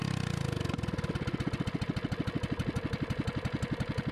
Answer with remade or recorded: recorded